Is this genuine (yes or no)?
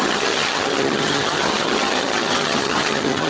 no